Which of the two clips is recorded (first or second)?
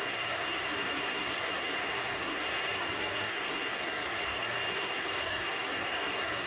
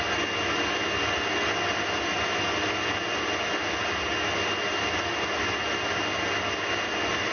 second